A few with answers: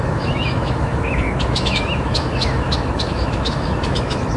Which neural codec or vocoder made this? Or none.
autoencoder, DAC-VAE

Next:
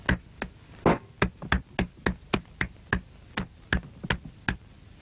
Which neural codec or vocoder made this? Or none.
none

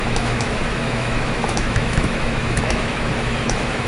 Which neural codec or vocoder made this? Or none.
autoencoder, DAC-VAE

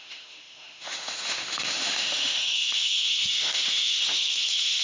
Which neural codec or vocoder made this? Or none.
autoencoder, DAC-VAE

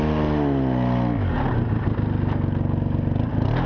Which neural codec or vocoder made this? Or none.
none